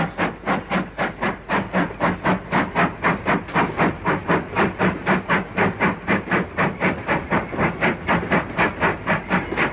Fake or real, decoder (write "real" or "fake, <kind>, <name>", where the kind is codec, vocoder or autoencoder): real